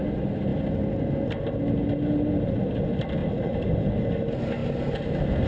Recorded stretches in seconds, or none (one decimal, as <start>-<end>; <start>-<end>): 0.0-3.2; 4.1-5.5